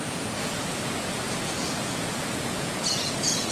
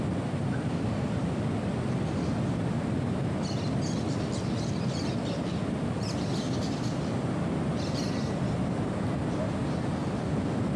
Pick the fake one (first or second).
first